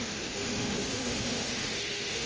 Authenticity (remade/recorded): remade